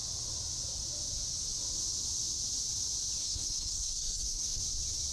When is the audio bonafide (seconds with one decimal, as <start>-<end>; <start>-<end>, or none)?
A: 0.0-3.2; 4.6-5.1